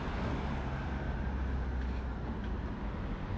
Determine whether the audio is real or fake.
real